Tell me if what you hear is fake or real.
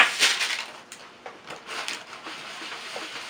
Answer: real